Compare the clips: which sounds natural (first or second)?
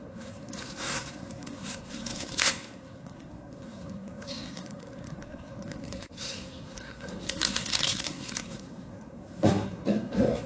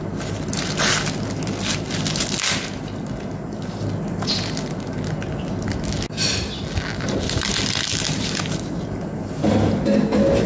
second